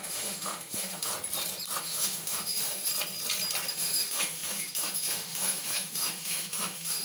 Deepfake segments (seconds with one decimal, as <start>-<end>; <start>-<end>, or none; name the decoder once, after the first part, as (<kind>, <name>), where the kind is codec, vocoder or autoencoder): 0.0-1.1 (autoencoder, DAC-VAE); 1.8-2.9; 3.7-7.0